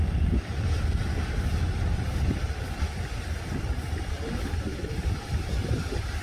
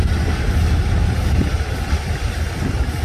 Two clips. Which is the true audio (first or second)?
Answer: second